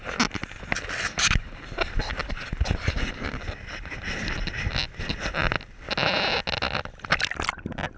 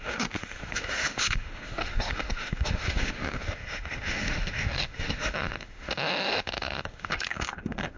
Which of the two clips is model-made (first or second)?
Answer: second